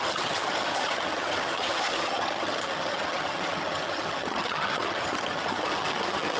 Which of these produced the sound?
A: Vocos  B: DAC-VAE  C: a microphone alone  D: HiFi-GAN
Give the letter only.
D